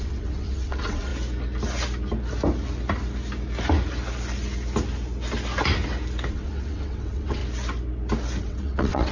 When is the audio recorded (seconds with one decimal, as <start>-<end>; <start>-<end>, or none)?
1.1-6.3; 7.4-8.4